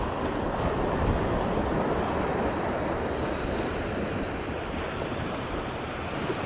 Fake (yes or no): no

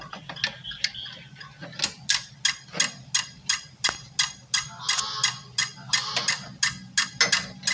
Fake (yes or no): no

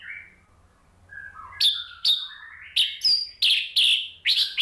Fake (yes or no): no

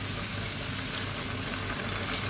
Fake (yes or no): no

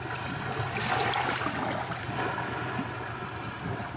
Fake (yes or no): no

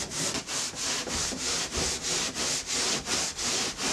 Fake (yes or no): no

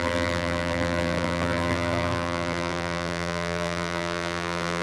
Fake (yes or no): yes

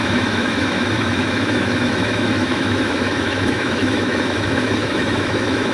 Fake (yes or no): yes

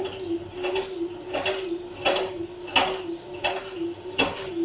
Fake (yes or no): no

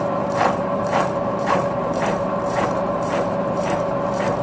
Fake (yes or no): yes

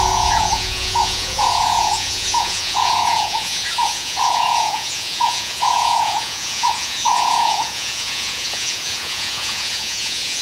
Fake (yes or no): yes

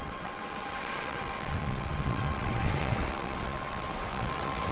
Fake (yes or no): yes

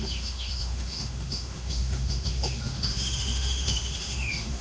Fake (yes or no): yes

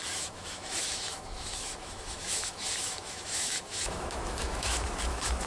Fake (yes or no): yes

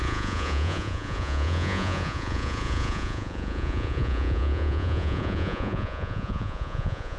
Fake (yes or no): yes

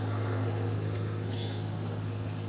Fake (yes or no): yes